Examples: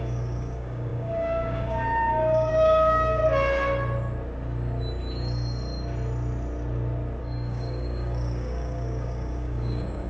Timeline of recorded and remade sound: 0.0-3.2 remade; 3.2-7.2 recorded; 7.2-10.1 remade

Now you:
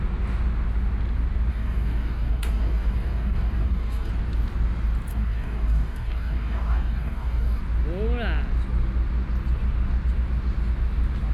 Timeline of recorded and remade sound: 0.0-1.5 recorded; 1.5-4.1 remade; 4.1-5.1 recorded; 5.1-7.6 remade; 7.6-11.3 recorded

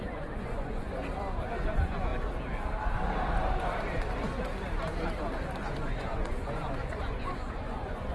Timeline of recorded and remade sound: 0.0-0.9 remade; 0.9-1.5 recorded; 1.5-2.1 remade; 2.1-5.6 recorded; 5.6-8.1 remade

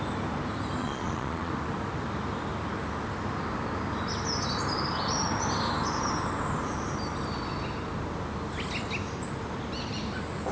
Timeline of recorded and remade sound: 0.0-0.8 recorded; 0.8-1.5 remade; 1.5-10.5 recorded